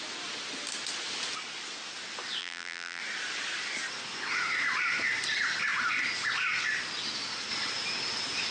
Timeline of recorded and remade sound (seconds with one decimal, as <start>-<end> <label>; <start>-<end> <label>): 0.0-2.4 recorded; 2.4-3.0 remade; 3.0-8.5 recorded